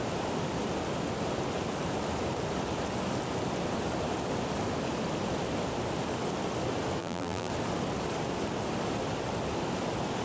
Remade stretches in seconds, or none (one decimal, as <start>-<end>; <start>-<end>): 7.0-7.5